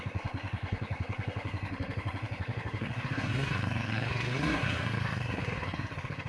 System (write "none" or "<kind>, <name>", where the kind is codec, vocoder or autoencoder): codec, SNAC